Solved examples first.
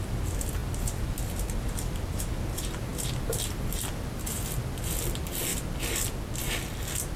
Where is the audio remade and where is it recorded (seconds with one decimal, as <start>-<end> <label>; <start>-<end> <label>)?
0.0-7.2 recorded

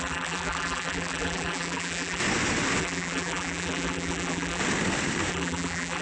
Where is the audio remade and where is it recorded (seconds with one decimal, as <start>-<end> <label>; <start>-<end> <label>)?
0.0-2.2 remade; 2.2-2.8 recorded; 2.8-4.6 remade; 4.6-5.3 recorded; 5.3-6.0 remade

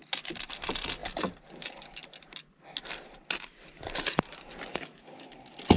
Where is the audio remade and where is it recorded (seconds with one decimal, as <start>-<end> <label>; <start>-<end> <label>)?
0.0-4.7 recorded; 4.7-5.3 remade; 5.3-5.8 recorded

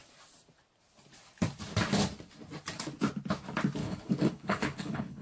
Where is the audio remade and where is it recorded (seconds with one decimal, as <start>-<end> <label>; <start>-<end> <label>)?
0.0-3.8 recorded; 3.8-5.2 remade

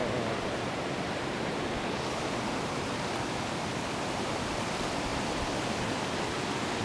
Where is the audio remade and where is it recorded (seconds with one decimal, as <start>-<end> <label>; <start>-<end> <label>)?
0.0-6.8 recorded

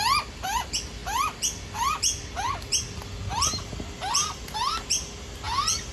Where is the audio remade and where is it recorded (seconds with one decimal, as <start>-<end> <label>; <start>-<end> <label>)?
0.0-5.9 recorded

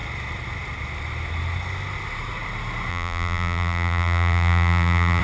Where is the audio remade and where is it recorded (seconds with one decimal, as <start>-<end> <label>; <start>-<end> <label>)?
0.0-2.9 recorded; 2.9-5.2 remade

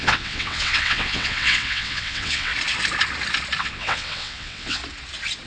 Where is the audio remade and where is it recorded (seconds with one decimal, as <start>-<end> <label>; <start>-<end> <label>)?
0.0-2.5 remade; 2.5-3.6 recorded; 3.6-4.8 remade; 4.8-5.5 recorded